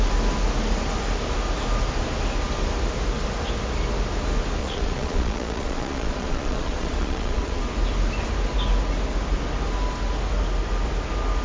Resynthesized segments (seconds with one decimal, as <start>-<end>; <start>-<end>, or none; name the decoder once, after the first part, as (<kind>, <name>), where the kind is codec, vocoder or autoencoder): 4.6-7.6 (vocoder, Vocos)